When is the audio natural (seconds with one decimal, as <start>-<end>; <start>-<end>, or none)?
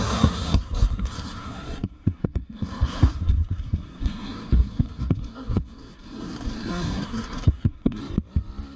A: 8.0-8.8